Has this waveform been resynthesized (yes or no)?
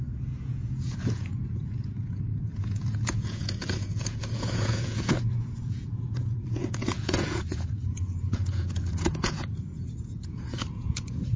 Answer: yes